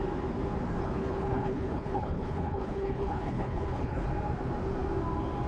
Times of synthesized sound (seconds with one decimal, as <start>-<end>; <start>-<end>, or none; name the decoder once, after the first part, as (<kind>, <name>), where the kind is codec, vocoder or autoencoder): 0.8-4.1 (codec, HILCodec)

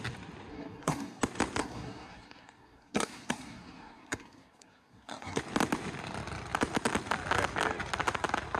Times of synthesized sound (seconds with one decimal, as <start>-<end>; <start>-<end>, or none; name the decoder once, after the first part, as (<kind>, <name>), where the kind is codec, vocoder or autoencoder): 0.5-1.2 (codec, SNAC); 1.6-5.4